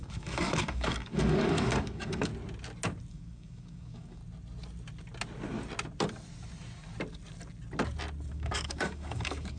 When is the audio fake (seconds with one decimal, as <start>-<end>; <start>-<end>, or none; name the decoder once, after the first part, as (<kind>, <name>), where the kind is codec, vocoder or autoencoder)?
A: 0.0-2.3 (codec, DAC); 3.1-4.2; 8.3-9.6